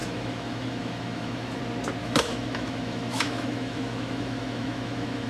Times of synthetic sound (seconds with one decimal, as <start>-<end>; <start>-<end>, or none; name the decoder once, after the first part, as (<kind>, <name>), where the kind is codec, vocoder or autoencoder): 0.0-1.6 (autoencoder, DAC-VAE); 2.0-5.3